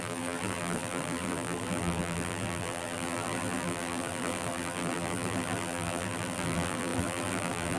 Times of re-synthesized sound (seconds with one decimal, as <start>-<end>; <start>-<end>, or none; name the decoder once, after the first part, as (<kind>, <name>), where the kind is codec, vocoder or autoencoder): 0.0-7.8 (vocoder, BigVGAN v2)